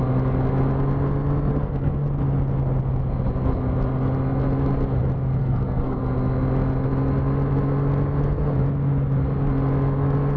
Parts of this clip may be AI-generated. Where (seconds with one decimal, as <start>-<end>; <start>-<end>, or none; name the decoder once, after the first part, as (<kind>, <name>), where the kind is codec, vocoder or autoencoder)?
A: 1.5-2.1 (codec, SNAC); 5.4-6.0